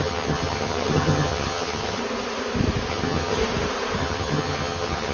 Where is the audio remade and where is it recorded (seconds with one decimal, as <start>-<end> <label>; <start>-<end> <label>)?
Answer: 0.0-2.0 remade; 2.0-2.9 recorded; 2.9-3.4 remade; 3.4-4.0 recorded; 4.0-5.1 remade

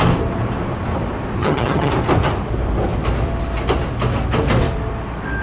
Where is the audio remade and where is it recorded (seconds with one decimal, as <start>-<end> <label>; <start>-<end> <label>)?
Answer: 0.0-1.4 recorded; 1.4-1.9 remade; 1.9-5.4 recorded

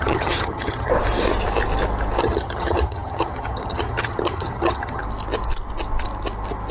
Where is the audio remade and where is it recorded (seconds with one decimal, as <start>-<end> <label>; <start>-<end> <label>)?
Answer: 0.0-0.9 remade; 0.9-2.2 recorded; 2.2-5.0 remade; 5.0-6.7 recorded

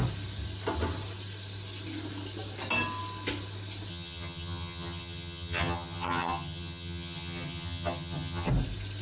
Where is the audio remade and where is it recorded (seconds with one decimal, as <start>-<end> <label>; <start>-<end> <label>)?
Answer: 0.0-3.9 recorded; 3.9-8.5 remade; 8.5-9.0 recorded

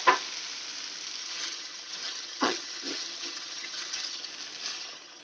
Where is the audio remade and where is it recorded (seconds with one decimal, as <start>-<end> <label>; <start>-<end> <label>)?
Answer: 0.0-1.2 recorded; 1.2-4.3 remade; 4.3-4.7 recorded; 4.7-5.2 remade

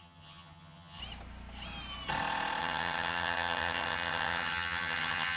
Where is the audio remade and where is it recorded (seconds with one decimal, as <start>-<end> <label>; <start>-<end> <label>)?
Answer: 0.0-1.0 remade; 1.0-2.6 recorded; 2.6-5.4 remade

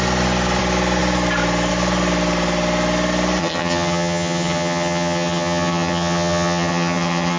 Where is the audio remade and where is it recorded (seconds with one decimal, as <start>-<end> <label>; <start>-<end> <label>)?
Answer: 0.0-3.4 recorded; 3.4-7.4 remade

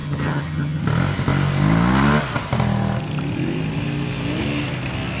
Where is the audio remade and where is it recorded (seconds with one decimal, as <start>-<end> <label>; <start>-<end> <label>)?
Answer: 0.0-0.8 remade; 0.8-5.2 recorded